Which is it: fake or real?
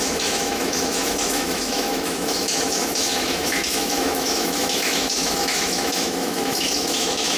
fake